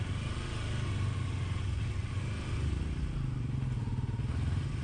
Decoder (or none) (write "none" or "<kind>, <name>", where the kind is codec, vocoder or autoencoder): none